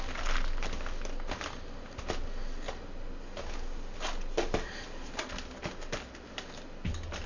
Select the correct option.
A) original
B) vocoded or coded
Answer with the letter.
A